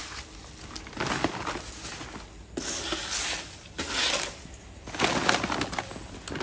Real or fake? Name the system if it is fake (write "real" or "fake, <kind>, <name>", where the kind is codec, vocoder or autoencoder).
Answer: real